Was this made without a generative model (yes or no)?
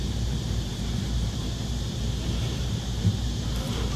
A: no